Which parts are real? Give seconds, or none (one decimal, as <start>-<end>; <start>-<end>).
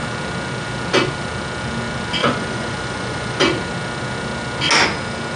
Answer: 0.0-2.2; 3.4-5.4